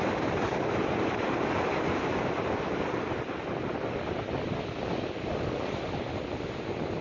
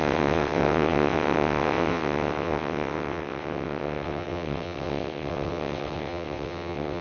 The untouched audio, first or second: first